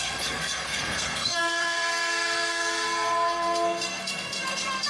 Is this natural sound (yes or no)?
no